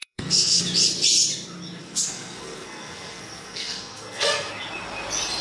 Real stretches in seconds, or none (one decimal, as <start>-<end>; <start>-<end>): 0.6-1.8; 4.5-5.4